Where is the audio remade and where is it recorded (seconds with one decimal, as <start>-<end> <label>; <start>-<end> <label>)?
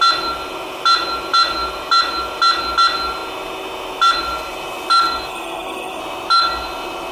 0.0-5.3 recorded; 5.3-6.0 remade; 6.0-7.1 recorded